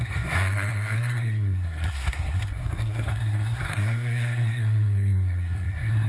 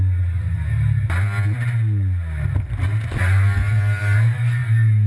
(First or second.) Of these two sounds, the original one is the second